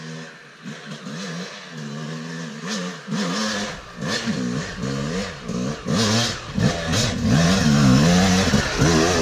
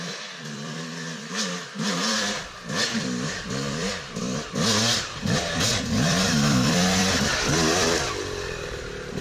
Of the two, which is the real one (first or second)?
first